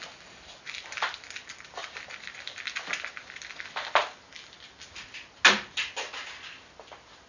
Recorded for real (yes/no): yes